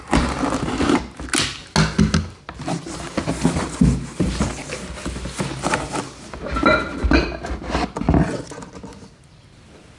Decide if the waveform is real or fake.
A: real